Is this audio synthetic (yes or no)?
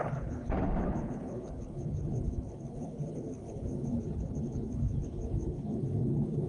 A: yes